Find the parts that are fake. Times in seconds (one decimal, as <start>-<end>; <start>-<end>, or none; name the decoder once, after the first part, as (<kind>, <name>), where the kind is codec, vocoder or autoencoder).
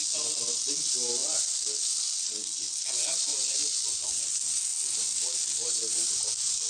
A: none